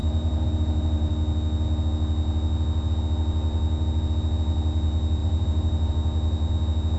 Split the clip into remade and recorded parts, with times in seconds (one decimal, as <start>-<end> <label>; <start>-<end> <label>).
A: 0.0-1.1 remade; 1.1-5.2 recorded; 5.2-5.9 remade; 5.9-7.0 recorded